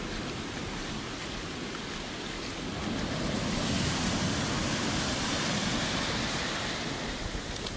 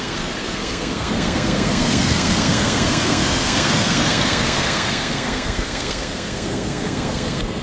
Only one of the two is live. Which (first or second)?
first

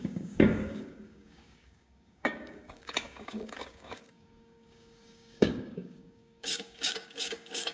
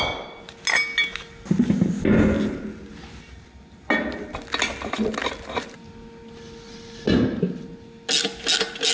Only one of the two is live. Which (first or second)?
second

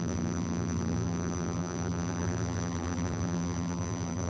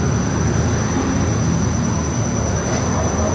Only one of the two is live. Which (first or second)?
second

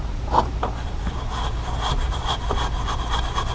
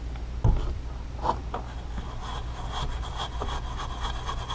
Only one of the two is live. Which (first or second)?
second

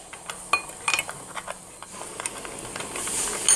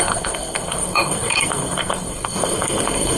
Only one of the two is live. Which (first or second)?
first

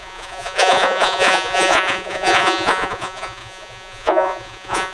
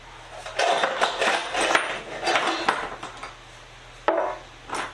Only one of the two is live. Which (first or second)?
second